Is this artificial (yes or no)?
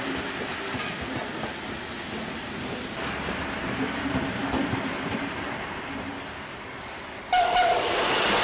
no